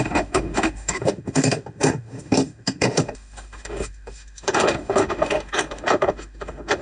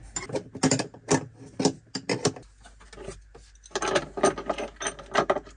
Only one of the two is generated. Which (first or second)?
first